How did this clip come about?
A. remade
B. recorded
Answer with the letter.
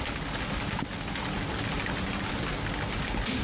B